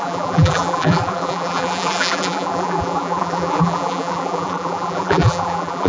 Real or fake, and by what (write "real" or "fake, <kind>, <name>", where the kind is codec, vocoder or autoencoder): fake, vocoder, BigVGAN v2